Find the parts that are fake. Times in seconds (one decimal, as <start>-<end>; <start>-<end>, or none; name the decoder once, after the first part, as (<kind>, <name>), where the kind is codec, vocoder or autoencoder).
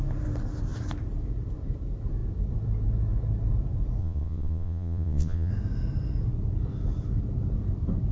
4.0-5.5 (vocoder, Vocos)